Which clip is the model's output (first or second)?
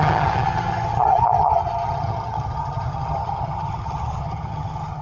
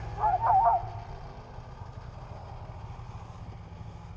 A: first